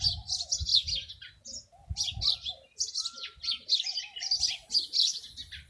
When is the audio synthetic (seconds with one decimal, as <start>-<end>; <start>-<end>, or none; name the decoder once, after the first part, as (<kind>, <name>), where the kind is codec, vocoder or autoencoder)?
none